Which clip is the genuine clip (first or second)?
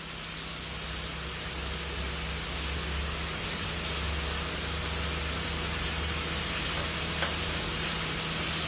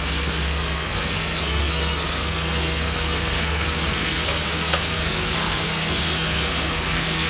first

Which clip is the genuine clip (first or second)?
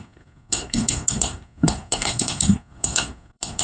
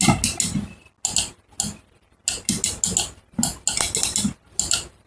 second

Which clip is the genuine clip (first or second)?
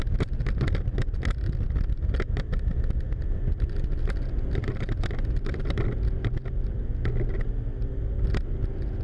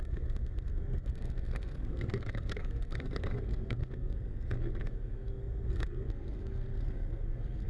first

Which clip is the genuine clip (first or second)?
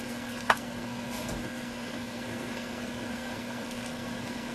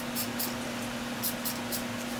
second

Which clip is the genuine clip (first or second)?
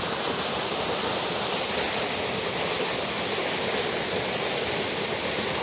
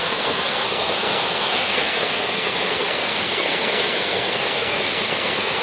first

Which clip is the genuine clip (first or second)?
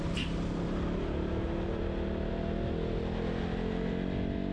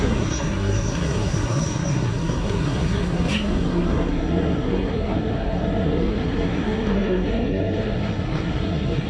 first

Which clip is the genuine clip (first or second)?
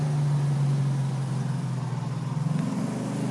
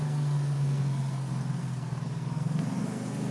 first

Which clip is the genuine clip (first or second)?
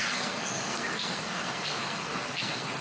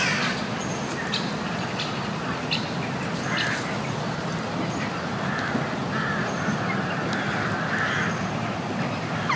second